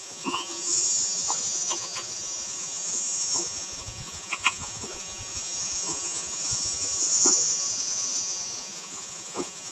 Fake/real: fake